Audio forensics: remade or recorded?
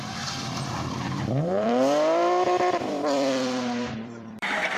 remade